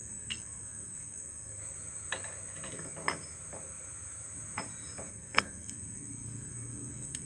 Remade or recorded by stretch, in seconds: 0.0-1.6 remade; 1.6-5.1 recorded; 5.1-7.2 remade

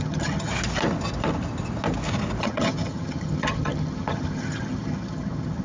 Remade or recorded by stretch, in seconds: 0.0-0.5 remade; 0.5-2.4 recorded; 2.4-5.6 remade

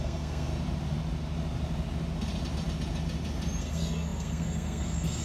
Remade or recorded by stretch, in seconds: 0.0-0.5 remade; 0.5-3.6 recorded; 3.6-5.2 remade

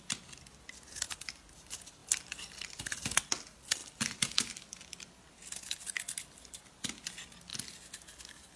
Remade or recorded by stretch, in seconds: 0.0-8.6 recorded

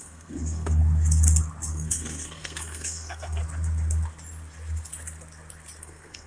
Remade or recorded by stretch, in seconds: 0.0-0.8 remade; 0.8-1.7 recorded; 1.7-3.4 remade; 3.4-5.8 recorded; 5.8-6.3 remade